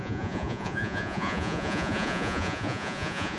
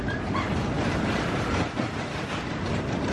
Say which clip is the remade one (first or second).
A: first